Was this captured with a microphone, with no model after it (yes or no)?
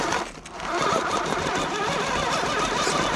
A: yes